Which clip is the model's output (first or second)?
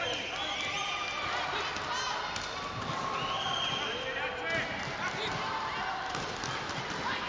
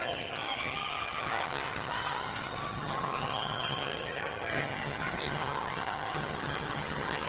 second